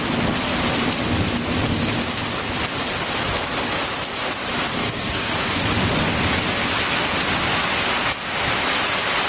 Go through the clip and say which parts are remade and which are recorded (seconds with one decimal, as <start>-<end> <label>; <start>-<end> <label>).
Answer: 0.0-4.8 recorded; 4.8-5.3 remade; 5.3-9.3 recorded